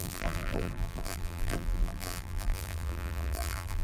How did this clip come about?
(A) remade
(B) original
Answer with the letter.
A